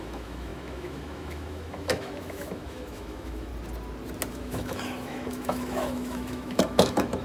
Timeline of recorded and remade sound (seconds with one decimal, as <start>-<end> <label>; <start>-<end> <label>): 0.0-3.5 remade; 3.5-4.3 recorded; 4.3-7.2 remade